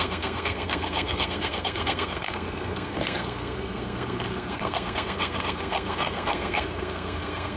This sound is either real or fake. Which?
fake